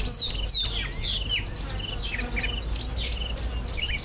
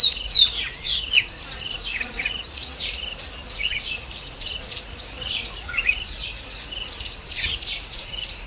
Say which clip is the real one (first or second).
first